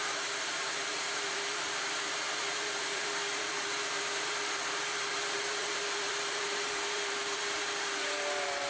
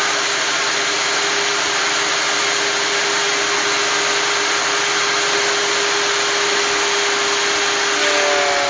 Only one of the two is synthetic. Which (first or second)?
first